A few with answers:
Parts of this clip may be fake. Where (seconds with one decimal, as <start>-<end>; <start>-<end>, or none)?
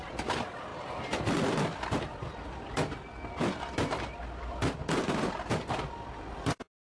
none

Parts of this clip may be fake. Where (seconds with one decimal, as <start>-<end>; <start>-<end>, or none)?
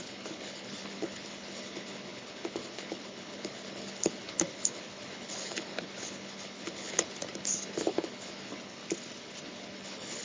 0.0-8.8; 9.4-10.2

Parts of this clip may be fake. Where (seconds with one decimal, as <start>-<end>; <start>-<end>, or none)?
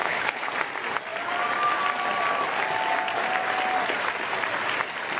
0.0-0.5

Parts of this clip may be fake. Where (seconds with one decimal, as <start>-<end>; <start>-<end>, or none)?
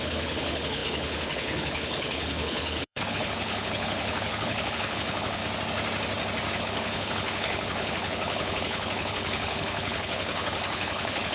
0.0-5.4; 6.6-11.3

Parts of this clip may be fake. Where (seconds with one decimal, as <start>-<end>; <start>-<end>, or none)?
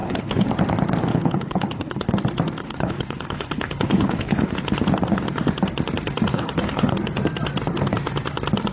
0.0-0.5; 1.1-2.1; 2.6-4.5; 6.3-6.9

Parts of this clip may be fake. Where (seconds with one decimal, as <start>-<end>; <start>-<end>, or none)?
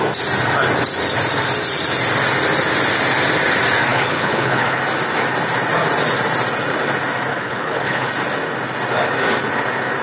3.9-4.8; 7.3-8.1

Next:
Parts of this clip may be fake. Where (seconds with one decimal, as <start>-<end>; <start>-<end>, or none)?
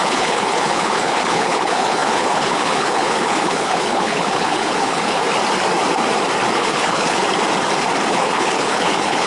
0.0-5.2; 6.5-7.2; 8.1-9.3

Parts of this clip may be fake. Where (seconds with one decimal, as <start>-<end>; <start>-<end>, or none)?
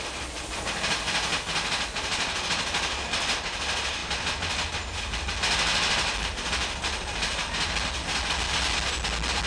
none